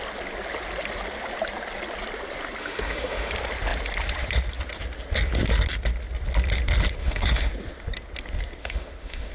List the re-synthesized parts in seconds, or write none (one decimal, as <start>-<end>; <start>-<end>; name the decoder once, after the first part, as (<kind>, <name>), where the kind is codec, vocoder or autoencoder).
2.6-3.3 (autoencoder, DAC-VAE); 7.0-7.5; 8.6-9.3